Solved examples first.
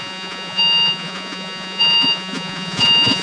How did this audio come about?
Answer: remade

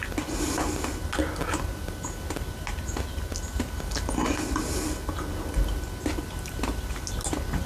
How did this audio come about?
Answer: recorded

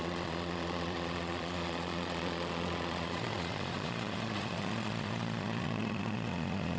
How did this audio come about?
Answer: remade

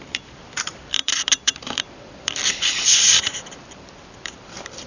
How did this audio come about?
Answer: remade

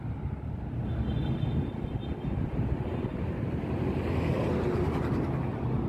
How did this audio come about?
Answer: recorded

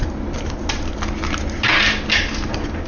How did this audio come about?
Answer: recorded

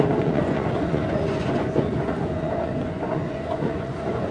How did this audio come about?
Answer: remade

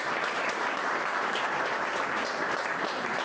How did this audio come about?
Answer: remade